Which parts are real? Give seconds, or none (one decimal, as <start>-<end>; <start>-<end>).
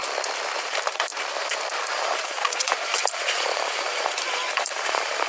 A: 0.0-0.6; 1.1-1.9